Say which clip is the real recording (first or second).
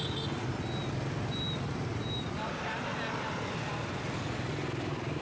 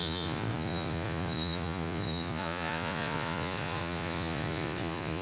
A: first